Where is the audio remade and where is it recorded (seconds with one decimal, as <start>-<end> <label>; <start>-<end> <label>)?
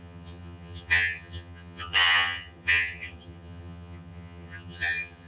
0.0-5.3 remade